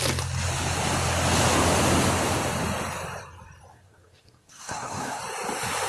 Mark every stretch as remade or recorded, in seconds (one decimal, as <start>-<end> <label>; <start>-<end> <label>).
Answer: 0.0-3.7 recorded; 3.7-5.2 remade; 5.2-5.9 recorded

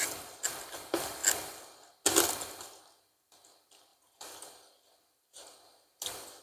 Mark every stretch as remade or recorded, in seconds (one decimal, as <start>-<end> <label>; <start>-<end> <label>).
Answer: 0.0-6.4 recorded

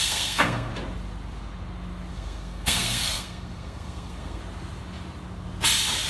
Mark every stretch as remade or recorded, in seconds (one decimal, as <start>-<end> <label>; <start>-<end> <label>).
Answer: 0.0-0.7 remade; 0.7-2.1 recorded; 2.1-4.4 remade; 4.4-6.1 recorded

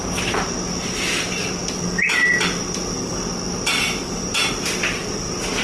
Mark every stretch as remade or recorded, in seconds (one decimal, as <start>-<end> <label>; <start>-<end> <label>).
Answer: 0.0-5.6 recorded

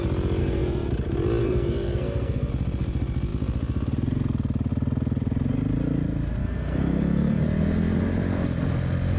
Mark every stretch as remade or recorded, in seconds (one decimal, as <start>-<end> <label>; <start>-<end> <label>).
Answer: 0.0-0.4 recorded; 0.4-0.9 remade; 0.9-1.4 recorded; 1.4-2.5 remade; 2.5-6.4 recorded; 6.4-7.4 remade; 7.4-9.2 recorded

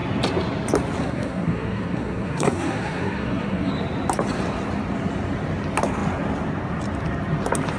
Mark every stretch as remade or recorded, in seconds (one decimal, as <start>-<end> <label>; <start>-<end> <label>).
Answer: 0.0-1.0 recorded; 1.0-3.7 remade; 3.7-7.8 recorded

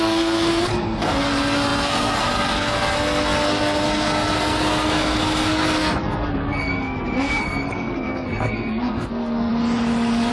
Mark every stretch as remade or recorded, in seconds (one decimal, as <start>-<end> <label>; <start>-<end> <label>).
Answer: 0.0-9.5 remade; 9.5-10.3 recorded